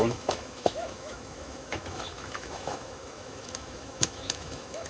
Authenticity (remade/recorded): remade